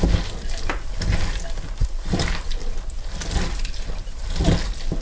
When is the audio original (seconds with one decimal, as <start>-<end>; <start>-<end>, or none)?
0.0-5.0